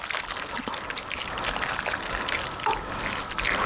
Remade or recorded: recorded